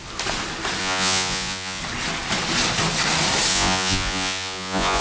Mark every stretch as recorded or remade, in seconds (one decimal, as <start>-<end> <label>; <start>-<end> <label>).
0.0-0.8 recorded; 0.8-1.8 remade; 1.8-3.5 recorded; 3.5-5.0 remade